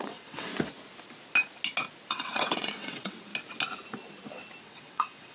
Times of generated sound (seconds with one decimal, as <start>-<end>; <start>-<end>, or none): 0.0-0.5; 2.1-3.3; 4.6-5.3